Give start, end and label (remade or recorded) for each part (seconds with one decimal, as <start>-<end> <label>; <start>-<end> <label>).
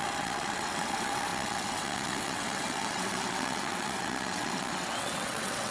0.0-5.7 remade